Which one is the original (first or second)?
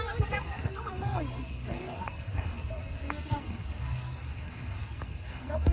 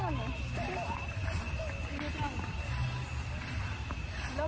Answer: second